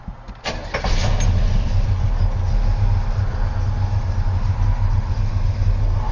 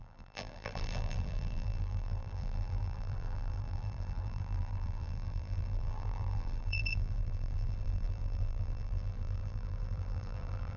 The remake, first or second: second